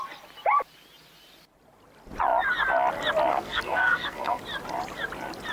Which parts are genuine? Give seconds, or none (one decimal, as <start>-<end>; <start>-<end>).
0.0-3.3; 4.4-5.5